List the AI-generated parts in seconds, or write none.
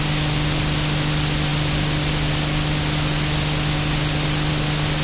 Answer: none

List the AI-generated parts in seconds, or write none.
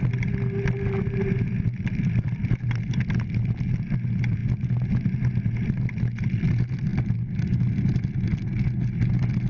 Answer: 2.0-2.7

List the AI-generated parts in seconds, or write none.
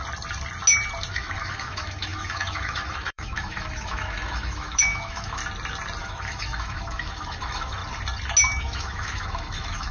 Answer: 1.1-5.4; 6.0-7.8; 8.6-9.9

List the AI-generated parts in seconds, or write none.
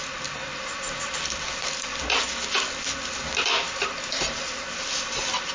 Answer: 0.0-0.4; 1.0-1.9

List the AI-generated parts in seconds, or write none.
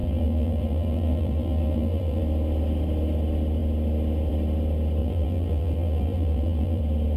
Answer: 0.0-2.2; 5.0-6.8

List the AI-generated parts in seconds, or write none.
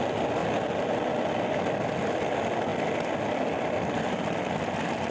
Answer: none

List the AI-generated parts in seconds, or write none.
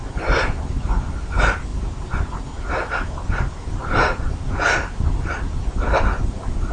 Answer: none